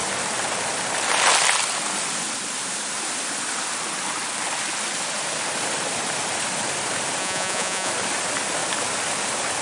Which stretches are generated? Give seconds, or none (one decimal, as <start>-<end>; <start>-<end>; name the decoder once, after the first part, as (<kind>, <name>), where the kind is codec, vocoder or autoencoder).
7.2-7.9 (vocoder, Vocos)